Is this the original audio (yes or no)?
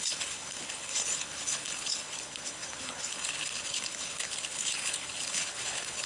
no